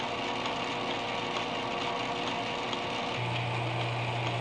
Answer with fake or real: real